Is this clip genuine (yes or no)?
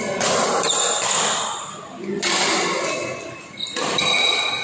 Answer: yes